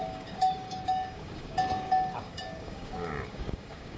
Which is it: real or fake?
fake